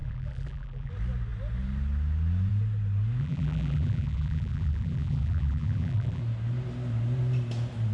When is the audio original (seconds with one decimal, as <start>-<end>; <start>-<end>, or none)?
0.9-3.2; 6.2-7.9